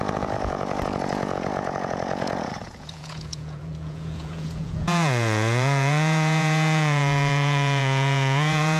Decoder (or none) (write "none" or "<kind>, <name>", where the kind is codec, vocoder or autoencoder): vocoder, Vocos